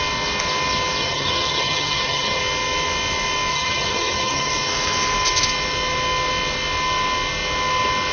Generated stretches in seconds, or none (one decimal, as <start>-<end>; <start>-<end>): 1.0-2.4; 3.5-4.5